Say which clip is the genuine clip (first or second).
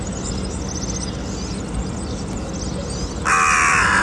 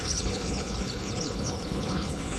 first